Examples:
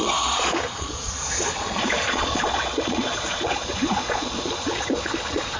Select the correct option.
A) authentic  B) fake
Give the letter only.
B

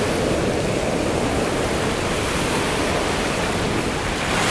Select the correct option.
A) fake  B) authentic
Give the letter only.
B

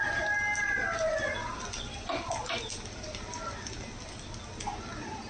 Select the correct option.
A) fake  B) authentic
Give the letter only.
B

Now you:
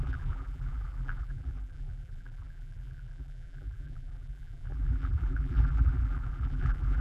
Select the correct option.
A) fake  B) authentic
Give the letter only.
A